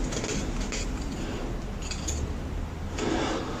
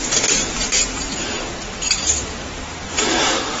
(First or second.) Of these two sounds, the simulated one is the second